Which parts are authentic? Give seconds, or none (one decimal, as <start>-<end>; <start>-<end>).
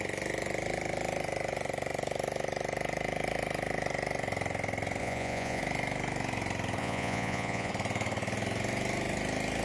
0.0-5.0; 5.6-6.8; 7.7-9.6